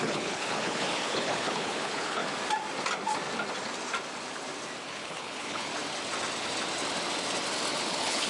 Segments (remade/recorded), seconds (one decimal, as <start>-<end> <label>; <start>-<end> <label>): 0.0-2.2 remade; 2.2-4.9 recorded; 4.9-5.7 remade; 5.7-7.8 recorded; 7.8-8.3 remade